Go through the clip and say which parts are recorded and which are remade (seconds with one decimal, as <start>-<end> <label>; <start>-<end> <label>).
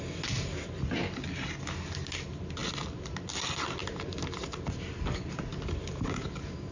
0.0-6.7 recorded